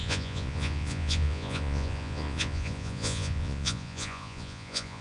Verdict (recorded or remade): remade